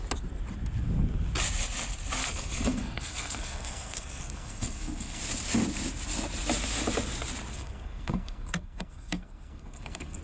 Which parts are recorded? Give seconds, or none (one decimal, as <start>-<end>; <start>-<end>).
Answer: 0.0-2.2; 5.2-7.5